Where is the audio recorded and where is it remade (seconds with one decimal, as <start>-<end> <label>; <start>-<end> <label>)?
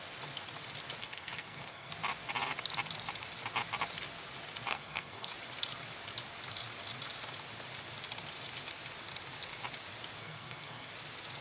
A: 0.0-1.0 recorded; 1.0-1.9 remade; 1.9-4.7 recorded; 4.7-5.3 remade; 5.3-10.2 recorded; 10.2-10.9 remade; 10.9-11.4 recorded